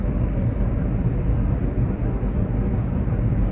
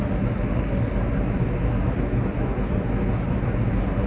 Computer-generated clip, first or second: first